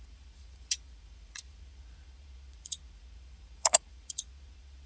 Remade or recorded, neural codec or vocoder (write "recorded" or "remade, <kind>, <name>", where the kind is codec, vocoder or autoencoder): remade, vocoder, Vocos